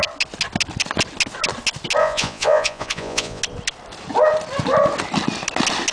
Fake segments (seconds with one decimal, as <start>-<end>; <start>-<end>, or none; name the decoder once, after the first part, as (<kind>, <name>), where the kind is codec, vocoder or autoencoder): 2.0-3.4 (vocoder, Vocos)